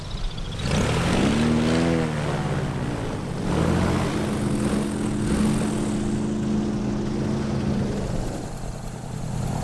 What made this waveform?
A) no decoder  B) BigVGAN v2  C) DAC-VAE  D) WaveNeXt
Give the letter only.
A